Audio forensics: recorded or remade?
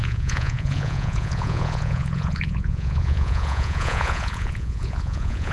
remade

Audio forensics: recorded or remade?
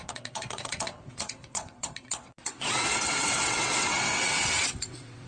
remade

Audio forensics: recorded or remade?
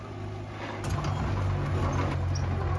recorded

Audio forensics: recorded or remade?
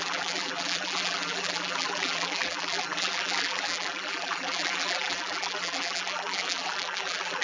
remade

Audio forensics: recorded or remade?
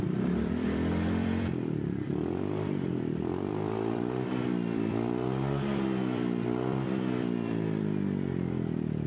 remade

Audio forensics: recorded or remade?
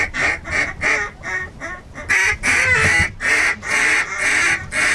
recorded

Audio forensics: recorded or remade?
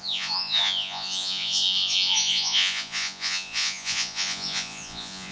remade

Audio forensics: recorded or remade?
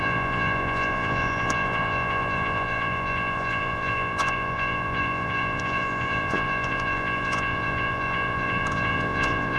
remade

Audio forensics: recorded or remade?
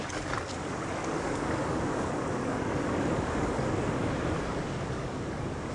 remade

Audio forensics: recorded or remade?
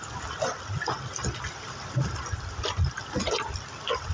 recorded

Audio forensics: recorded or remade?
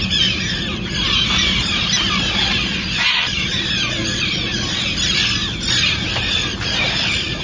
recorded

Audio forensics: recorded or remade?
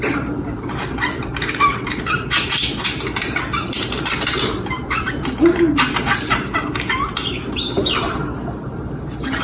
remade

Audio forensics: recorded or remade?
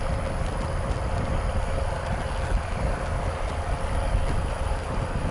recorded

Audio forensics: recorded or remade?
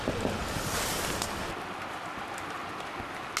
recorded